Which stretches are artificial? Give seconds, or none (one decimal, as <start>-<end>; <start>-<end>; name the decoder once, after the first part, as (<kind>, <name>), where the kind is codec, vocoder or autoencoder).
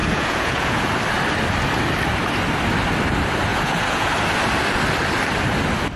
0.0-0.9 (vocoder, Vocos); 3.5-4.1